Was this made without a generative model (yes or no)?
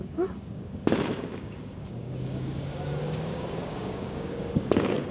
no